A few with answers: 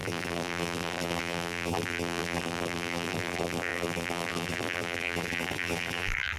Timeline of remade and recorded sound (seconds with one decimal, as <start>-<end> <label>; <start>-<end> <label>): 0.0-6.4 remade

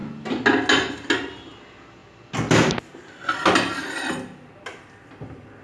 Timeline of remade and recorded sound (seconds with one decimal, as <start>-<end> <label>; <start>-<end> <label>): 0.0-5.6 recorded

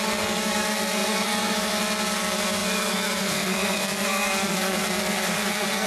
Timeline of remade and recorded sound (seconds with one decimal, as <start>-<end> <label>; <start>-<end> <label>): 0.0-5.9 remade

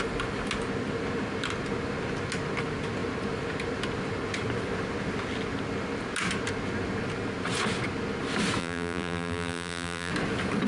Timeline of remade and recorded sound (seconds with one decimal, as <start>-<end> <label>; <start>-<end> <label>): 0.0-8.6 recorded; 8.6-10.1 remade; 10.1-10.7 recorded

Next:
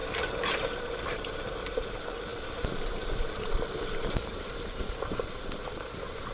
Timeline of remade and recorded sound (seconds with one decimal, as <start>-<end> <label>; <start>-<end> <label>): 0.0-6.3 remade

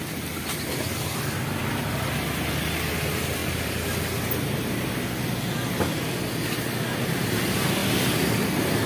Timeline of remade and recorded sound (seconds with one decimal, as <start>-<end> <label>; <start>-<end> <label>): 0.0-3.4 recorded; 3.4-4.0 remade; 4.0-8.9 recorded

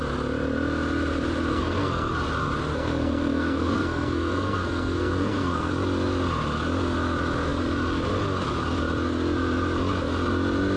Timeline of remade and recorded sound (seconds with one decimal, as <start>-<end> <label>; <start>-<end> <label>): 0.0-1.5 recorded; 1.5-2.1 remade; 2.1-2.7 recorded; 2.7-5.7 remade; 5.7-10.8 recorded